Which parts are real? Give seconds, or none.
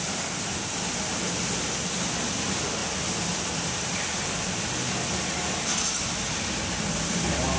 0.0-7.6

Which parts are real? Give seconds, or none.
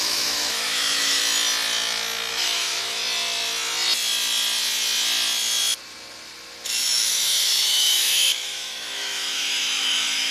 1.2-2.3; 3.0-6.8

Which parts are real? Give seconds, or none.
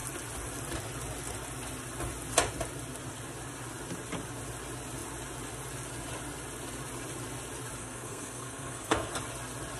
0.0-7.8; 9.1-9.8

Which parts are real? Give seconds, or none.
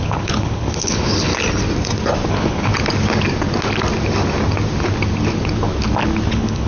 1.3-2.3; 2.7-6.3